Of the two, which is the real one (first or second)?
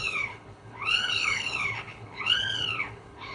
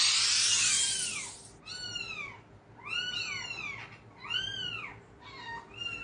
second